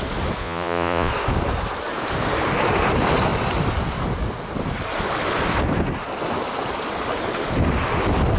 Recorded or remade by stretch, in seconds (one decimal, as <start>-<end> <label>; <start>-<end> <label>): 0.0-0.4 recorded; 0.4-1.1 remade; 1.1-8.4 recorded